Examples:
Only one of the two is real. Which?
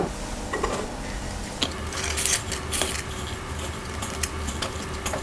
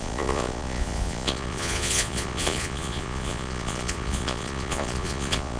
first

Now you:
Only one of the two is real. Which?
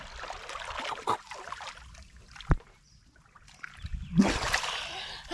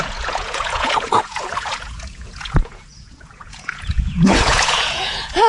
first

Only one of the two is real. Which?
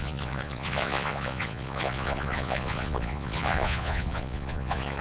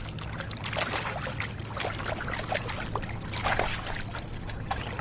second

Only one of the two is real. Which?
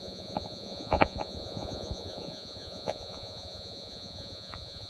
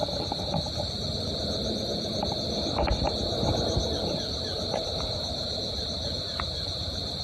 second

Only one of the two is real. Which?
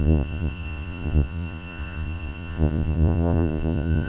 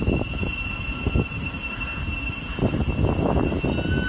second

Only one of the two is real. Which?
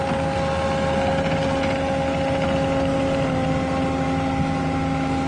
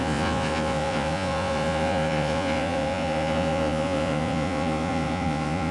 first